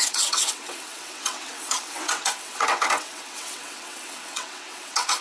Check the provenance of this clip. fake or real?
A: fake